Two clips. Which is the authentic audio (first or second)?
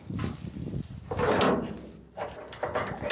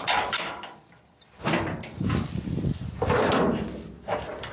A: first